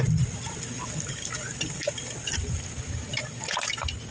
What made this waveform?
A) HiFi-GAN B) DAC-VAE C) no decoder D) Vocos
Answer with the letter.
C